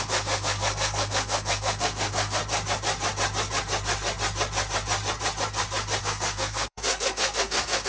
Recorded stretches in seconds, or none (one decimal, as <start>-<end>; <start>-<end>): 2.4-6.0